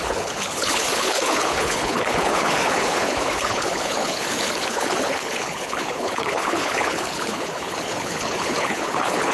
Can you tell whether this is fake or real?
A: fake